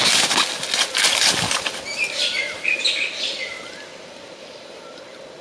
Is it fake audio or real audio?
real